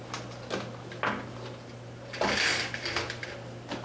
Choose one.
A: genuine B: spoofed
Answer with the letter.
A